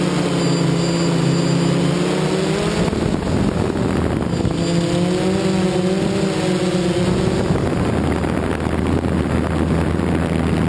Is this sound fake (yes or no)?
no